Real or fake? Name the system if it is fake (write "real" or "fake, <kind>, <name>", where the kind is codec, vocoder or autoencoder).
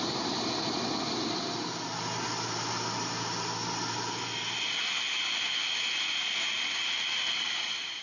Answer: real